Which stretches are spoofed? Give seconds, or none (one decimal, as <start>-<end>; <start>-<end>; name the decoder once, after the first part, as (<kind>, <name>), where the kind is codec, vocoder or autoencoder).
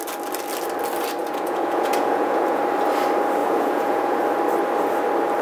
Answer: 1.2-2.6 (vocoder, Vocos); 3.4-4.2